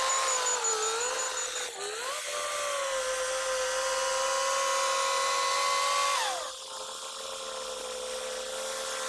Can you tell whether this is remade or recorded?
recorded